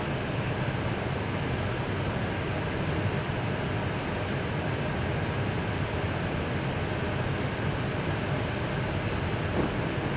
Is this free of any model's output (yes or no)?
yes